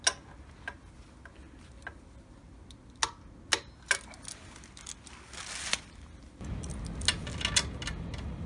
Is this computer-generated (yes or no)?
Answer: no